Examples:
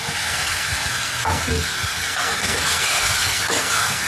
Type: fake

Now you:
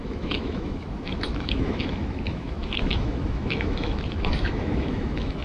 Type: fake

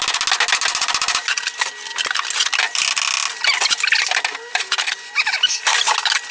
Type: real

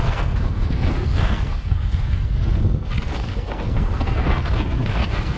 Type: fake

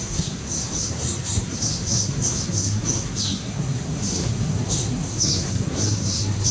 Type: fake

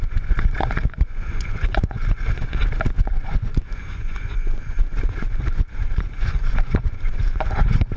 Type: fake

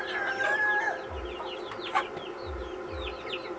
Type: real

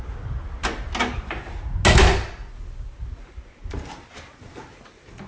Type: real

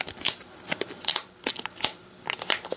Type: real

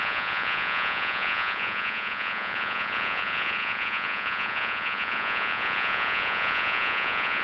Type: fake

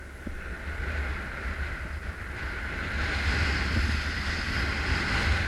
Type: real